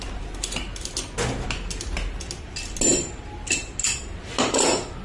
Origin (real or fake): real